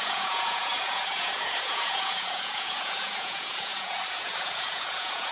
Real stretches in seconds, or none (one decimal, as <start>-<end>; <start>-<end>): none